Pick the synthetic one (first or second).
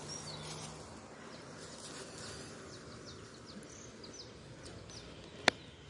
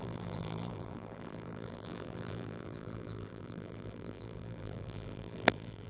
second